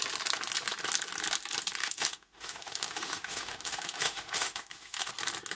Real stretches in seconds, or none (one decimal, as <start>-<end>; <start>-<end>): 0.0-1.8; 5.1-5.5